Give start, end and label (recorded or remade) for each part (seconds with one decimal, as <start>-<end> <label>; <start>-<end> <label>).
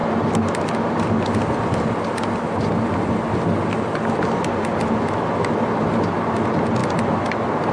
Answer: 0.0-7.7 recorded